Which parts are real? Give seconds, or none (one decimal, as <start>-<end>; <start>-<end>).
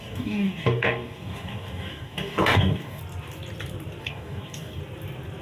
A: 3.0-4.0; 4.8-5.4